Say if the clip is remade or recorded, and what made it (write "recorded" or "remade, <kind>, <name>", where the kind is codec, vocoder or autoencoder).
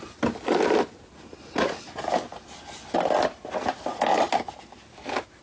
recorded